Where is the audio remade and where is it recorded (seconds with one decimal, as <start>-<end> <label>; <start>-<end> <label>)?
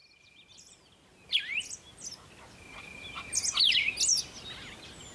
0.0-5.1 recorded